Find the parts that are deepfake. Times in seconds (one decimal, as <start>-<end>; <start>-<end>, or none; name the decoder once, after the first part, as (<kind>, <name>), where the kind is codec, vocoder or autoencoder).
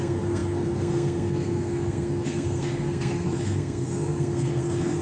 0.0-5.0 (codec, SNAC)